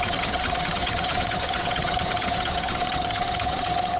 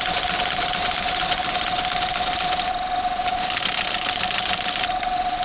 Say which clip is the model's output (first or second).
first